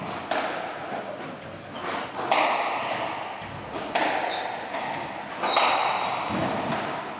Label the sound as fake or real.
real